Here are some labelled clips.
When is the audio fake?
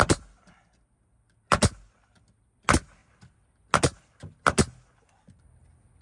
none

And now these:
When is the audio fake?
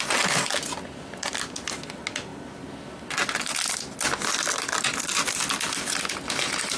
none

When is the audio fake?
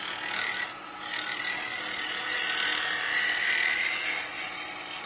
none